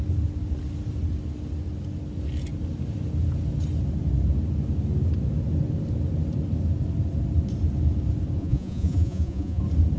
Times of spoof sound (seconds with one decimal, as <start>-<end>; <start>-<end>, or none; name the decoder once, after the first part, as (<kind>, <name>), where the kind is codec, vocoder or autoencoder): 8.4-9.6 (vocoder, Vocos)